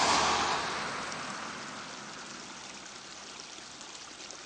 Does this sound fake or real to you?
real